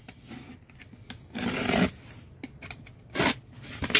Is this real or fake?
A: real